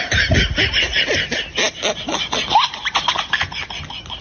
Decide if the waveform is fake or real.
real